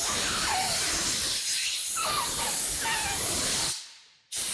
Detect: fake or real real